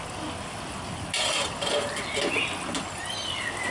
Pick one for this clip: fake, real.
real